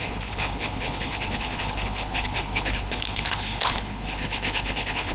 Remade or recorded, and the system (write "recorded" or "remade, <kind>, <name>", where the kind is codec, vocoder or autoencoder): remade, codec, HILCodec